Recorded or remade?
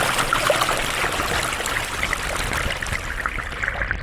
recorded